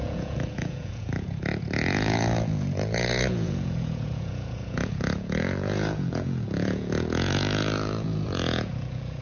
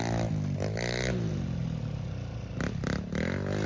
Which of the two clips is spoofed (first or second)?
first